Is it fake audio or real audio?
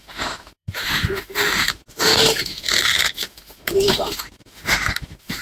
fake